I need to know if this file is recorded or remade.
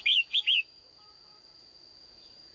remade